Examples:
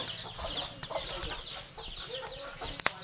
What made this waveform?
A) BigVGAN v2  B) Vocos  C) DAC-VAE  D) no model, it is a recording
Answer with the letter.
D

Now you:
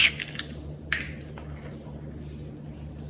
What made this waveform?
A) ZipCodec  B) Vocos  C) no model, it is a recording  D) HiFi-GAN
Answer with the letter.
C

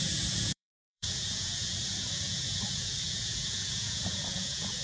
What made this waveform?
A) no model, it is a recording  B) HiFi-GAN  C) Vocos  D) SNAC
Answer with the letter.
C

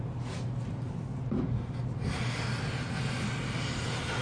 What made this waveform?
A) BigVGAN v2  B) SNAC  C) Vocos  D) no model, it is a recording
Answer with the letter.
D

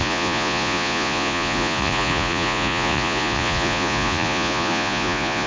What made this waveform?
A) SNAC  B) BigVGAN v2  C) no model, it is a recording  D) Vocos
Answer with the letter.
D